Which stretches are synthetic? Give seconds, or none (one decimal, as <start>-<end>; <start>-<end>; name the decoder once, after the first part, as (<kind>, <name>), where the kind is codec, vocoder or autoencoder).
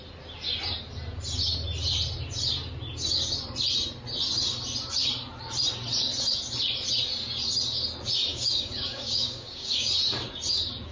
8.3-9.9 (codec, DAC)